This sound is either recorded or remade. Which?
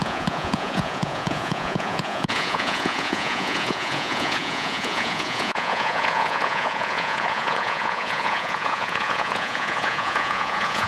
remade